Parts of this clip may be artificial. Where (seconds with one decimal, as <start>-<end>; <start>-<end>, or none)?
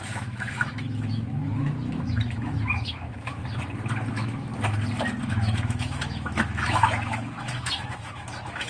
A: 0.0-3.4; 4.1-4.5; 5.3-8.7